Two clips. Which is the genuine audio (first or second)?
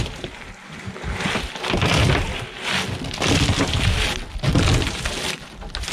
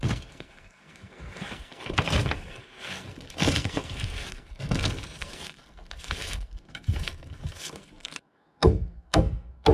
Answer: first